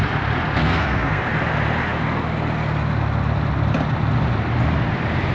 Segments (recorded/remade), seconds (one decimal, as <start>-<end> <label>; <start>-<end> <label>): 0.0-0.6 recorded; 0.6-1.2 remade; 1.2-5.3 recorded